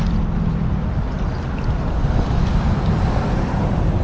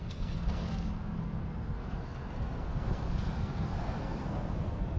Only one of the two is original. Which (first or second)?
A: first